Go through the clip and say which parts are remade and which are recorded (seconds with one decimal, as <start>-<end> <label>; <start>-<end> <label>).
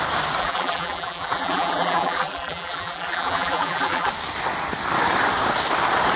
0.0-0.4 recorded; 0.4-4.1 remade; 4.1-6.2 recorded